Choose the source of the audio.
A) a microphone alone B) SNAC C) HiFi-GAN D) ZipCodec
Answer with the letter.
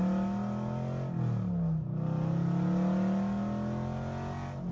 A